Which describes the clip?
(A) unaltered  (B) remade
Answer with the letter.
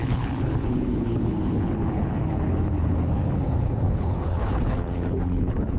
B